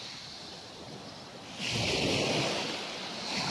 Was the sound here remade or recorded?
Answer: recorded